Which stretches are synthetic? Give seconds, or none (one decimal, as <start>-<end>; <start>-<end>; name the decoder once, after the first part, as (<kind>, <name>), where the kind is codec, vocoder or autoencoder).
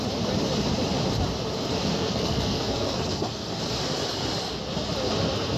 1.9-3.6 (codec, SNAC)